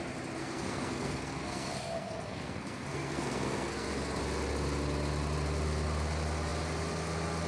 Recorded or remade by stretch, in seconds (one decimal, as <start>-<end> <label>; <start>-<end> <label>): 0.0-0.4 recorded; 0.4-4.2 remade; 4.2-7.5 recorded